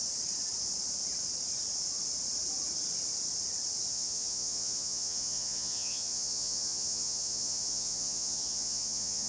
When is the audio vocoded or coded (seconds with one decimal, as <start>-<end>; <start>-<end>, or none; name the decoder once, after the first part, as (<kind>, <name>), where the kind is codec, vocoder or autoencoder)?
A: 3.9-9.3 (vocoder, Vocos)